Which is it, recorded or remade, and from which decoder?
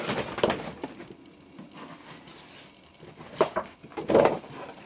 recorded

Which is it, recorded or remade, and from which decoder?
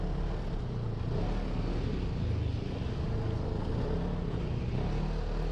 recorded